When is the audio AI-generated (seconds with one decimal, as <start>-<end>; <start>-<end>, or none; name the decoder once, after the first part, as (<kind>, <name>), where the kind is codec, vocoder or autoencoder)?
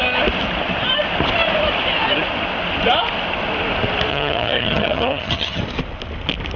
4.1-5.6 (vocoder, HiFi-GAN)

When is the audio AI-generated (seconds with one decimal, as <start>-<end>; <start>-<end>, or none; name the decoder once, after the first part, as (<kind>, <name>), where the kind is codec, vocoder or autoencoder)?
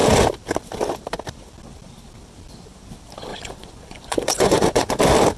3.3-5.0 (vocoder, Vocos)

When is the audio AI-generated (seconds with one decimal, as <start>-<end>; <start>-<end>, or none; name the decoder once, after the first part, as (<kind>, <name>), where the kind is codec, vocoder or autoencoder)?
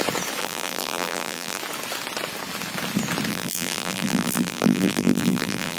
0.4-1.6 (vocoder, BigVGAN v2); 3.3-5.8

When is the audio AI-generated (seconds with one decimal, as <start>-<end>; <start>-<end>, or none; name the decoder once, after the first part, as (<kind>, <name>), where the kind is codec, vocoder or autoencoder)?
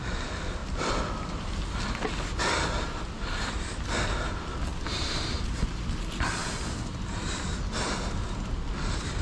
4.7-5.8 (vocoder, BigVGAN v2)